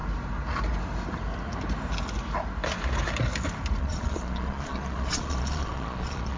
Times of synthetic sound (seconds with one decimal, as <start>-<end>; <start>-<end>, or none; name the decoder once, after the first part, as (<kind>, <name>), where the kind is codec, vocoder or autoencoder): 3.8-6.4 (vocoder, Vocos)